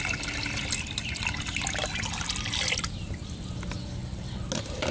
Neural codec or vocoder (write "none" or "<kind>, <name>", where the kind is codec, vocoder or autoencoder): none